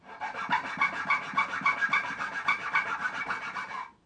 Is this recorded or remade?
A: recorded